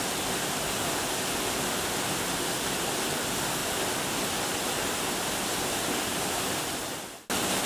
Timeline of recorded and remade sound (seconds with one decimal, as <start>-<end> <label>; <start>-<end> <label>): 0.0-7.7 recorded